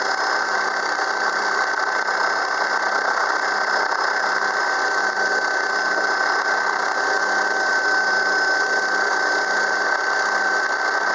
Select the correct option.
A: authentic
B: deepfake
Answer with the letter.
A